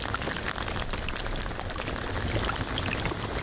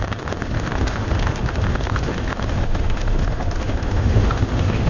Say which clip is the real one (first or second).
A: first